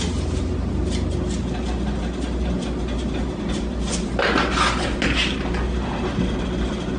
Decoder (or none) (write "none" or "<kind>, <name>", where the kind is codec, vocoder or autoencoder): none